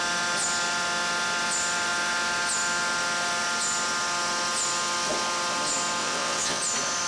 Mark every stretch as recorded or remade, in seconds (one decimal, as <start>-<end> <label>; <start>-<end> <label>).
0.0-6.0 recorded; 6.0-6.6 remade; 6.6-7.1 recorded

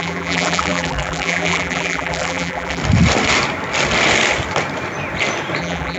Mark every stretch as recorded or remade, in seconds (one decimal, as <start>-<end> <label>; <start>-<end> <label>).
0.0-2.8 remade; 2.8-5.6 recorded; 5.6-6.0 remade

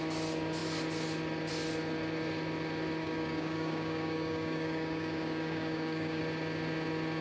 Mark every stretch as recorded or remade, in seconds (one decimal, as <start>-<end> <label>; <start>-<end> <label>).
0.0-3.0 recorded; 3.0-6.2 remade; 6.2-7.2 recorded

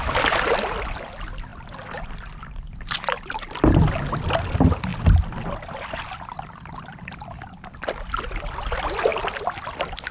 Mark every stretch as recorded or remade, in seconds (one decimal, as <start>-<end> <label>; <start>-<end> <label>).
0.0-10.1 recorded

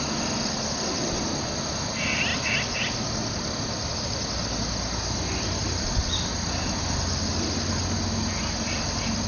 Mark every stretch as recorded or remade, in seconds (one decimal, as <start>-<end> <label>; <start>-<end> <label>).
0.0-9.3 recorded

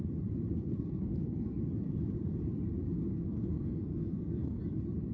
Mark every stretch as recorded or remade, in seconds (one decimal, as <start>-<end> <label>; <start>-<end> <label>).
0.0-0.5 recorded; 0.5-1.6 remade; 1.6-3.1 recorded; 3.1-4.6 remade; 4.6-5.1 recorded

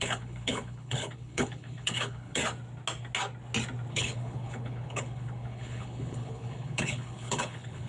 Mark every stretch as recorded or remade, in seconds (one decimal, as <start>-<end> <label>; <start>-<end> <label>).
0.0-2.4 remade; 2.4-3.9 recorded; 3.9-7.9 remade

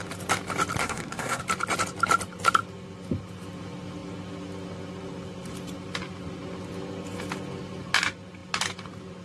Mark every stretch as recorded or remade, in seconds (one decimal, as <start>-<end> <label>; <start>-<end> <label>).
0.0-0.8 recorded; 0.8-1.4 remade; 1.4-9.2 recorded